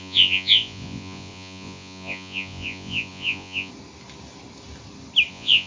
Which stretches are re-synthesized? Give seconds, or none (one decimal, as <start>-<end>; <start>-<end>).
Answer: 0.0-3.7; 5.3-5.7